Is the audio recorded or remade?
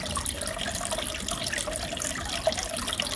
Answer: recorded